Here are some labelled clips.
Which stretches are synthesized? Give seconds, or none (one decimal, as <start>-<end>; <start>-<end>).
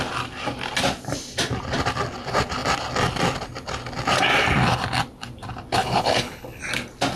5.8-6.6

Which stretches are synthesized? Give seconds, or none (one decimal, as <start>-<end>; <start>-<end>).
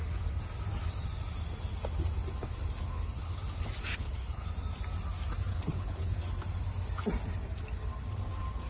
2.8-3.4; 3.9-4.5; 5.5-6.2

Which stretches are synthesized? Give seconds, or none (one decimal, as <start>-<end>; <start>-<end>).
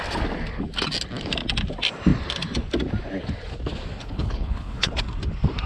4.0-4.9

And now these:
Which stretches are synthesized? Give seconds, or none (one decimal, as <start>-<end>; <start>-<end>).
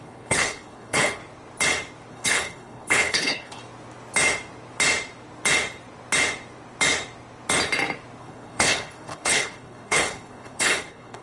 0.0-1.2; 2.1-3.6; 8.2-11.2